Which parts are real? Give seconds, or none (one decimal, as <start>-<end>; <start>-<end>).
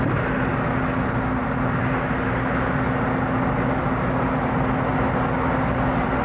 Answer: 0.0-6.2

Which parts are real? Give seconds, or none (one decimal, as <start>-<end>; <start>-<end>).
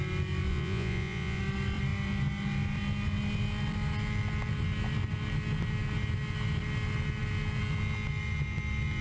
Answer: 0.0-0.5; 1.4-9.0